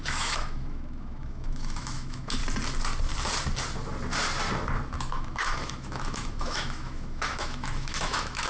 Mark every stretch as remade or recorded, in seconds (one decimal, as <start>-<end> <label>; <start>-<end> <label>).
0.0-2.4 remade; 2.4-4.9 recorded; 4.9-8.5 remade